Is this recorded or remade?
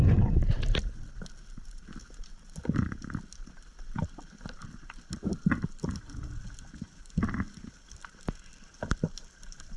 recorded